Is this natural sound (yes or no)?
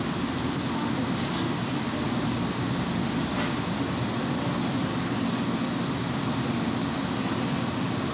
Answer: yes